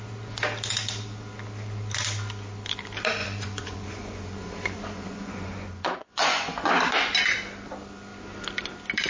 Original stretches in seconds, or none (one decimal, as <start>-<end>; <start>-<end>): 0.0-3.2; 6.7-9.1